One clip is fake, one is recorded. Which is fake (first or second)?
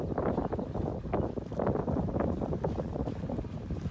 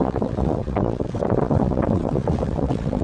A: second